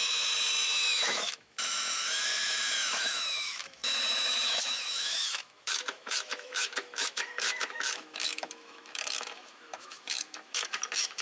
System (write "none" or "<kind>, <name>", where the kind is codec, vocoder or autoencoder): autoencoder, DAC-VAE